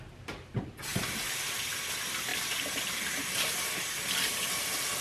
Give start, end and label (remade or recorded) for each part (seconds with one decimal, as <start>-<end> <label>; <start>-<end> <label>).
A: 0.0-0.9 recorded; 0.9-1.8 remade; 1.8-2.3 recorded; 2.3-3.6 remade; 3.6-5.0 recorded